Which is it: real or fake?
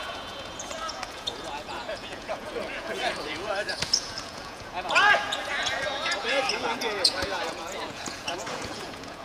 fake